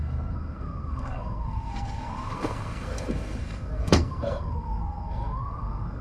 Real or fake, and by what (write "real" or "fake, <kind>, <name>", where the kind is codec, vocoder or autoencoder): fake, codec, SNAC